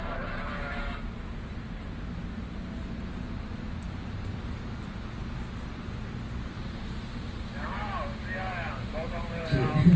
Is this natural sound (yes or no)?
yes